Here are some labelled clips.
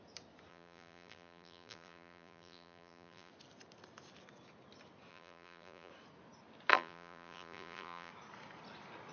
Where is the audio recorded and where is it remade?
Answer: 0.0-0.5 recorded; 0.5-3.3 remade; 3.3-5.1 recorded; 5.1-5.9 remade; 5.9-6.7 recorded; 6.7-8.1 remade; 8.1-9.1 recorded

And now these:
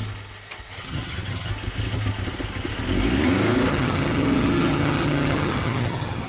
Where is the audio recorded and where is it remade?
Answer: 0.0-0.7 recorded; 0.7-1.5 remade; 1.5-3.7 recorded; 3.7-6.3 remade

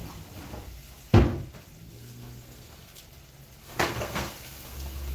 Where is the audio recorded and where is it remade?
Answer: 0.0-1.9 recorded; 1.9-3.0 remade; 3.0-3.6 recorded; 3.6-5.1 remade

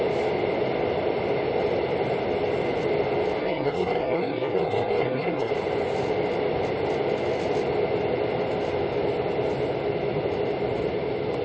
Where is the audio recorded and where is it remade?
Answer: 0.0-3.4 recorded; 3.4-5.5 remade; 5.5-11.4 recorded

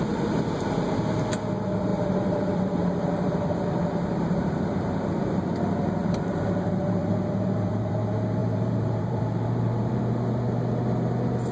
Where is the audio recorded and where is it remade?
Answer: 0.0-1.9 recorded; 1.9-4.6 remade; 4.6-6.0 recorded; 6.0-7.9 remade; 7.9-8.4 recorded; 8.4-10.0 remade; 10.0-11.5 recorded

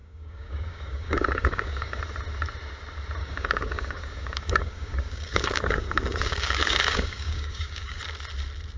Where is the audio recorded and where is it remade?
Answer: 0.0-2.0 remade; 2.0-3.2 recorded; 3.2-8.0 remade; 8.0-8.8 recorded

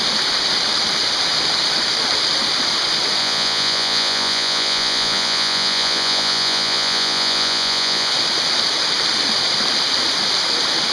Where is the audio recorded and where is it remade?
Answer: 0.0-3.2 recorded; 3.2-8.1 remade; 8.1-10.9 recorded

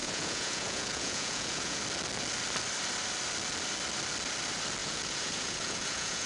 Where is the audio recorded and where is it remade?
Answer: 0.0-1.8 remade; 1.8-4.8 recorded; 4.8-6.3 remade